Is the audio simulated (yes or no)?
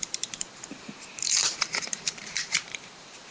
yes